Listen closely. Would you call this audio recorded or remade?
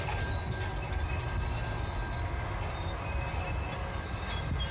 recorded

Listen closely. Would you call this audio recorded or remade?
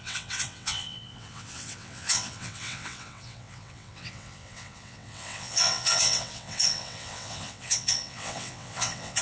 remade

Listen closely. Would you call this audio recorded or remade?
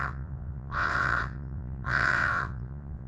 remade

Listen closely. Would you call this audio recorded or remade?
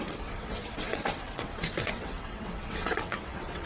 remade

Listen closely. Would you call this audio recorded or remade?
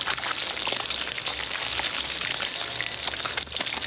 recorded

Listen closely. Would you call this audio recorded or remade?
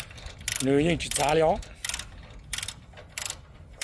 recorded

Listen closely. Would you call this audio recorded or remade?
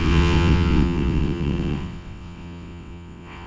remade